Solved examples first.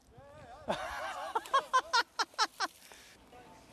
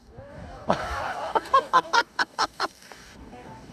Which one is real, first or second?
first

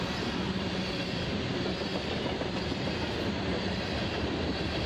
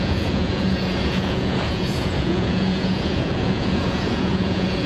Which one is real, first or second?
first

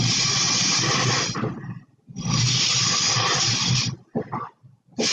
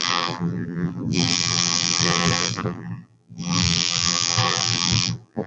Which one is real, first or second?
first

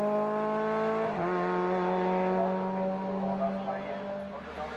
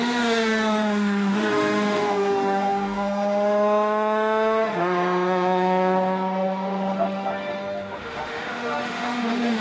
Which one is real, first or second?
first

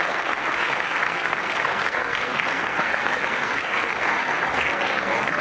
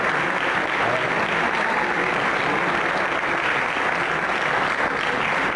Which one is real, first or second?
second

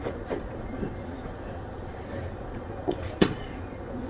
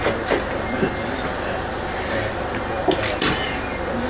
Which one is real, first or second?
second